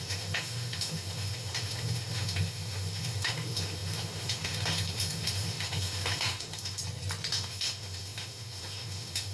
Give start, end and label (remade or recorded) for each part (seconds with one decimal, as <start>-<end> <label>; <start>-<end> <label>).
0.0-6.8 remade; 6.8-7.3 recorded; 7.3-9.3 remade